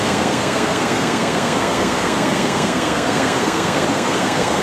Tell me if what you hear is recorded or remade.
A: remade